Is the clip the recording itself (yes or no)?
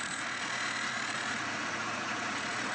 no